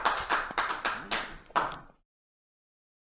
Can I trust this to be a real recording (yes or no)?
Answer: yes